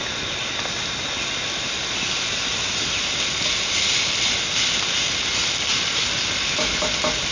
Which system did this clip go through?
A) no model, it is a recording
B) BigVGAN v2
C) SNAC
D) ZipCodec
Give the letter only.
A